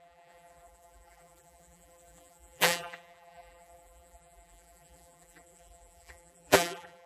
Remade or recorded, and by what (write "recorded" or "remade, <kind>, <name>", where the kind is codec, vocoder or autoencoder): remade, vocoder, BigVGAN v2